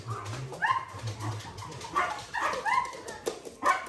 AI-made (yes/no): no